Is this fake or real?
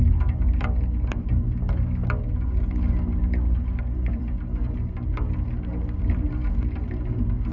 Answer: real